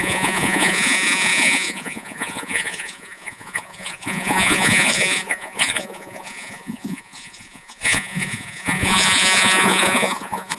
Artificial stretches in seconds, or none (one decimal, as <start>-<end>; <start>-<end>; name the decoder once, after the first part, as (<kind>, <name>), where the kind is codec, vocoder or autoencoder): 0.0-10.6 (vocoder, Vocos)